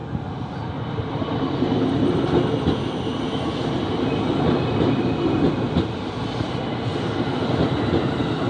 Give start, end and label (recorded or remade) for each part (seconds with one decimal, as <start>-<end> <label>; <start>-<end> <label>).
0.0-8.5 recorded